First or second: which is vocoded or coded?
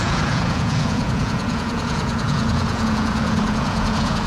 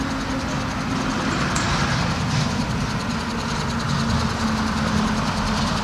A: first